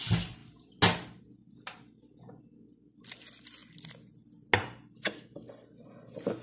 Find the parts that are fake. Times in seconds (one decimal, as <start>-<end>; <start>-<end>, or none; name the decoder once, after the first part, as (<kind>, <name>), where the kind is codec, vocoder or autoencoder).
none